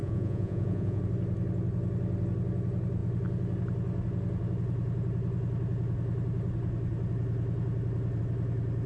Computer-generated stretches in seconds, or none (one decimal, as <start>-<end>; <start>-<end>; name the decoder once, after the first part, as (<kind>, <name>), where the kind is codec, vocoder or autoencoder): 0.0-1.0 (vocoder, Vocos)